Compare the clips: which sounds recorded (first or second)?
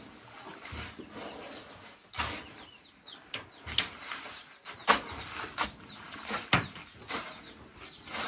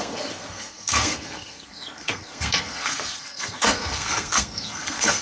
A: first